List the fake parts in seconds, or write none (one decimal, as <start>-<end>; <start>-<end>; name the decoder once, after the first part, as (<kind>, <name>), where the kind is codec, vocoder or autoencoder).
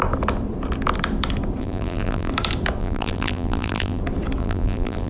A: 1.6-2.3 (vocoder, BigVGAN v2); 2.8-4.0; 4.4-5.1